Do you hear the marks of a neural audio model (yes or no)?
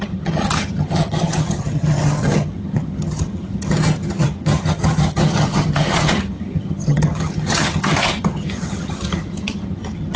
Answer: yes